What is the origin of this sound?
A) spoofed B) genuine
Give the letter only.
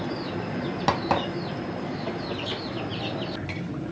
B